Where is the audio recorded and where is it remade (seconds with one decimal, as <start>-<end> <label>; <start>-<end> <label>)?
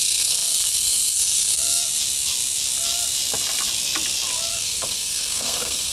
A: 0.0-1.8 remade; 1.8-4.5 recorded; 4.5-5.9 remade